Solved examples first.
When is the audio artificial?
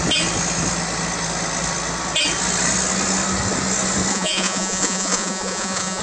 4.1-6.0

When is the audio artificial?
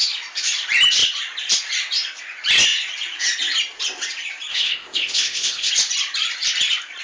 4.5-5.7